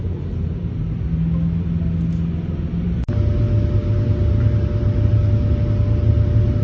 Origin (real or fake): real